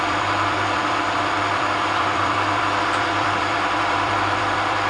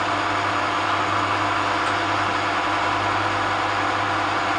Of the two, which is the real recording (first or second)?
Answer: second